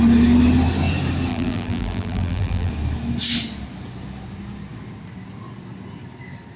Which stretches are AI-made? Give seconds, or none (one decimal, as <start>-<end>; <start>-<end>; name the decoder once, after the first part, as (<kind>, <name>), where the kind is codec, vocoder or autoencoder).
1.3-2.7 (vocoder, BigVGAN v2)